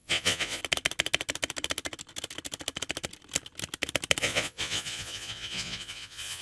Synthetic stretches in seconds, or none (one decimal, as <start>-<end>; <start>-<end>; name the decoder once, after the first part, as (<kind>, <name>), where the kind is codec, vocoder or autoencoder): 0.0-0.6 (vocoder, Vocos); 4.2-6.4